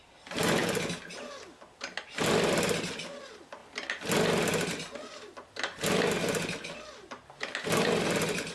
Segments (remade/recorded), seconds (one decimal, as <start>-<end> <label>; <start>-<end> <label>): 0.0-8.5 recorded